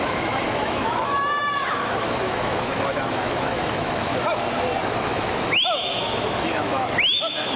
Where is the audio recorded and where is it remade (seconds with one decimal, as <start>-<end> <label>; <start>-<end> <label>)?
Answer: 0.0-4.1 remade; 4.1-4.8 recorded; 4.8-7.6 remade